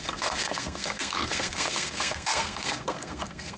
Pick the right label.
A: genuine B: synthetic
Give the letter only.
B